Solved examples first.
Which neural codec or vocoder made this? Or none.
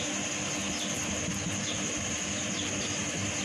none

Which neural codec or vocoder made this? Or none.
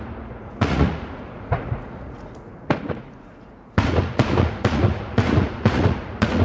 vocoder, Vocos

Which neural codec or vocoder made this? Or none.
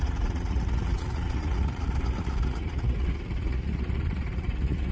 vocoder, Vocos